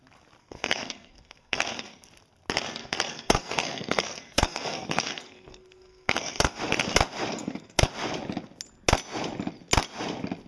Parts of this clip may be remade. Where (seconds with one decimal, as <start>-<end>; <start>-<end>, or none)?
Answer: 0.4-2.1; 2.8-6.6; 7.3-7.9